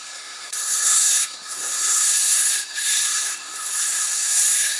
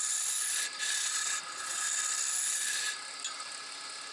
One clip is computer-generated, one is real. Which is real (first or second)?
second